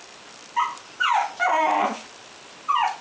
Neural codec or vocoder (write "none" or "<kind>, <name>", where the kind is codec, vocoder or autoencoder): none